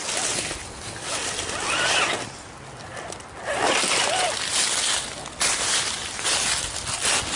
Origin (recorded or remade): recorded